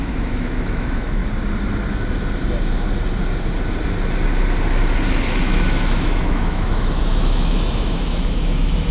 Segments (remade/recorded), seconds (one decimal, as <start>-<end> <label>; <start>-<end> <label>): 0.0-1.2 remade; 1.2-5.4 recorded; 5.4-8.9 remade